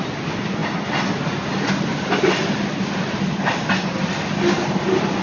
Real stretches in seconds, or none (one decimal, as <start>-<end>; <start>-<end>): 0.0-5.2